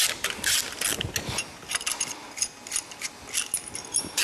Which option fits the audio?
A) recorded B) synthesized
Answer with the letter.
A